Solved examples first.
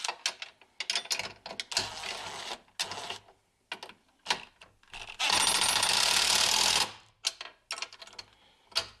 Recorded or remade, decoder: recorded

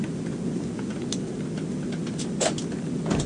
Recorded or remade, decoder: recorded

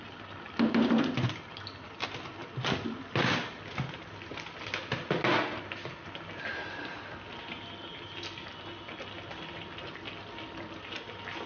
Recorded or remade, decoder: recorded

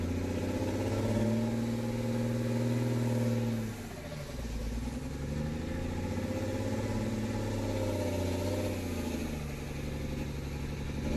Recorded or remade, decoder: recorded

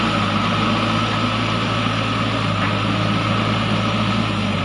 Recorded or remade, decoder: recorded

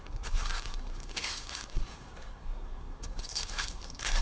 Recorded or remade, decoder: remade, codec, SNAC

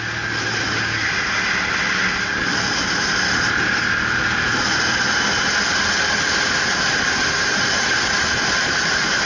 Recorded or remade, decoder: recorded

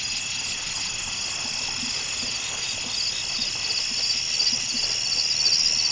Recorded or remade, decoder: recorded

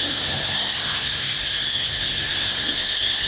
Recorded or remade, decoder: remade, codec, SNAC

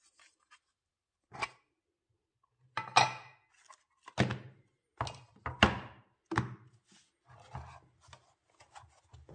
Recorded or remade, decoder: recorded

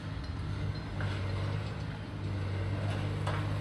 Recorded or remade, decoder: recorded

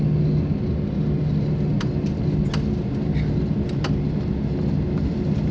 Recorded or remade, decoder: recorded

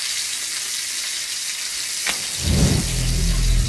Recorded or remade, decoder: recorded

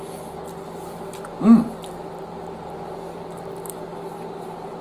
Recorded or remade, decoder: recorded